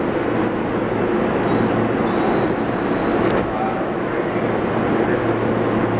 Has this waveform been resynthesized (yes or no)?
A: no